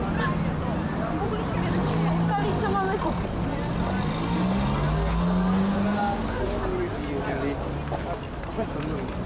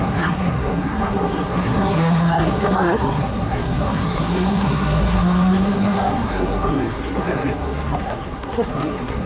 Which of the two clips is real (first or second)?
first